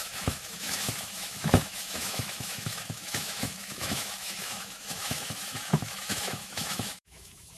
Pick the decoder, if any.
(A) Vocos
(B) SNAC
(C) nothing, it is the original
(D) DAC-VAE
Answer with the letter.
D